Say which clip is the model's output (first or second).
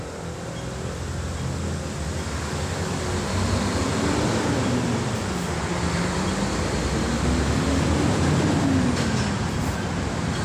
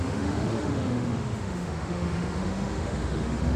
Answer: second